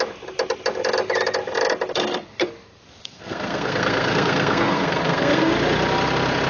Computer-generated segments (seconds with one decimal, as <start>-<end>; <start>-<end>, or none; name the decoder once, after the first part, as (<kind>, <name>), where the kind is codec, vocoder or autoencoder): 3.0-5.5 (codec, SNAC)